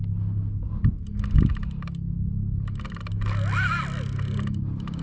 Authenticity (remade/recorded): recorded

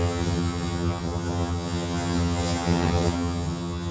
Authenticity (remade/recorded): remade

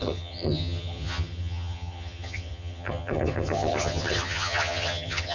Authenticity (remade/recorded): remade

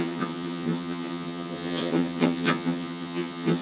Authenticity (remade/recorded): remade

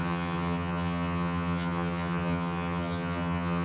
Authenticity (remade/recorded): remade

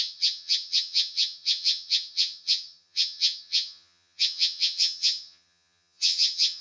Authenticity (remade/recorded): remade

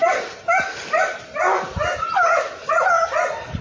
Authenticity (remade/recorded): recorded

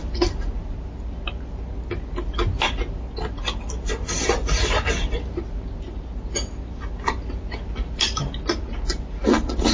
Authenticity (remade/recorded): recorded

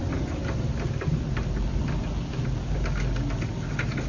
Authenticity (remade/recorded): recorded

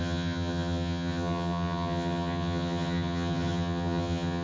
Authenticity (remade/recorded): remade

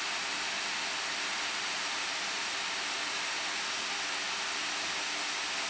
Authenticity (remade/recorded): recorded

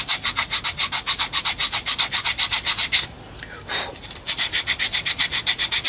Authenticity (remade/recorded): recorded